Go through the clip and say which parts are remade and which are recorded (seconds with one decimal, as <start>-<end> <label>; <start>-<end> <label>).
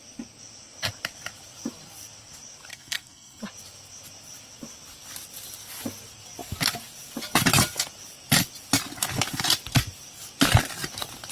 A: 0.0-2.7 recorded; 2.7-3.4 remade; 3.4-11.3 recorded